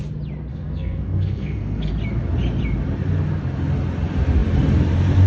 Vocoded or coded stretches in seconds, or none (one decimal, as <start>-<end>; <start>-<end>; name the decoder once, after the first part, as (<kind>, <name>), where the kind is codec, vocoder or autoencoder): 0.5-1.9 (codec, SNAC)